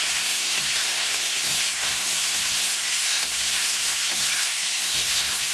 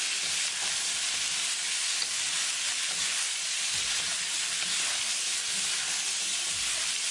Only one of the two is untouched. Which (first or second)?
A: second